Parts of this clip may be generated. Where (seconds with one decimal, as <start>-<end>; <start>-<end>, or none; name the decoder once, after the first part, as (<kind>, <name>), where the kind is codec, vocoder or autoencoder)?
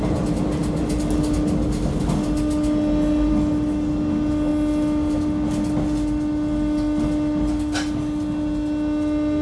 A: none